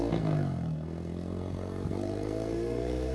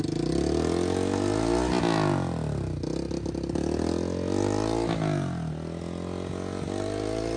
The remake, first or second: first